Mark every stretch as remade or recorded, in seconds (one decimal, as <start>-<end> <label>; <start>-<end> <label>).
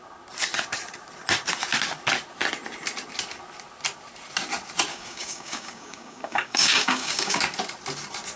0.0-4.9 recorded; 4.9-7.4 remade; 7.4-8.4 recorded